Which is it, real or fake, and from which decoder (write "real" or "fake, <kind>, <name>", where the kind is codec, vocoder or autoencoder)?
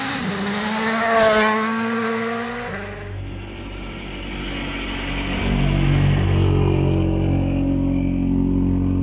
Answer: real